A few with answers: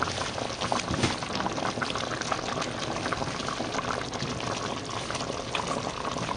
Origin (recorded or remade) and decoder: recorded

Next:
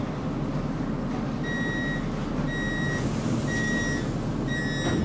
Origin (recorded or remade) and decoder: recorded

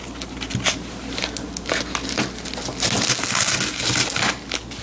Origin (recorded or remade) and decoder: recorded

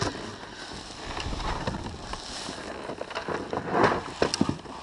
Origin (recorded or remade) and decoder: recorded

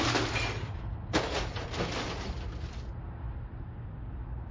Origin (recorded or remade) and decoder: recorded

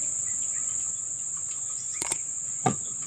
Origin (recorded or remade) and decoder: remade, vocoder, Vocos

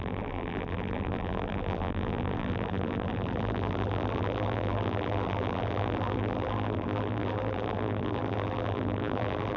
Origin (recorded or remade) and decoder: remade, vocoder, BigVGAN v2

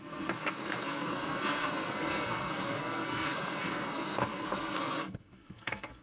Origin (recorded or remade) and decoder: remade, codec, SNAC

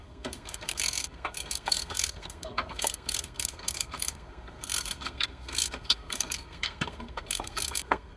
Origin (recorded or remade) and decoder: remade, codec, SNAC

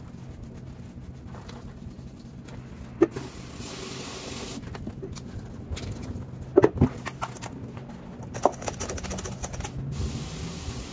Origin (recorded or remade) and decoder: recorded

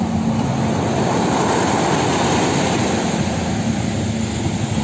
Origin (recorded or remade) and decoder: recorded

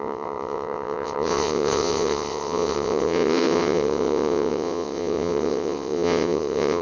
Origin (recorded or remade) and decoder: remade, vocoder, WaveNeXt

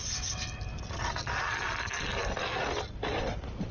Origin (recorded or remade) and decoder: recorded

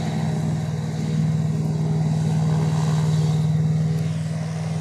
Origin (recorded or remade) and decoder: recorded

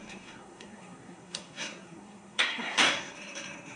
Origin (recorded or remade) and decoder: remade, codec, SNAC